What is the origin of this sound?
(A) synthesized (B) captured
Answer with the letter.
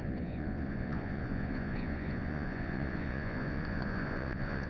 A